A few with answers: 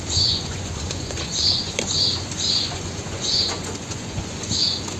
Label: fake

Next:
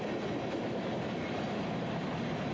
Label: real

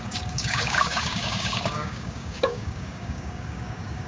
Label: fake